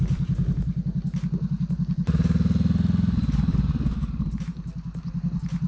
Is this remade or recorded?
recorded